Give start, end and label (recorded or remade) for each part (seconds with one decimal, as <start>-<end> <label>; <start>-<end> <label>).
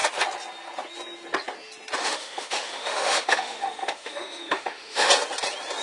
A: 0.0-2.0 recorded; 2.0-5.1 remade; 5.1-5.8 recorded